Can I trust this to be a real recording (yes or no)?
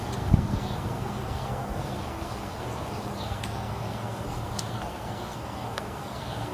no